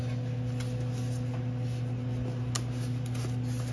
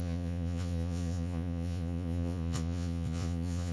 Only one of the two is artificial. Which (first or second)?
second